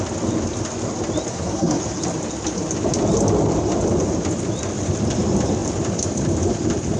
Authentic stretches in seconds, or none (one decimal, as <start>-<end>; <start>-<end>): 0.0-1.3; 1.8-7.0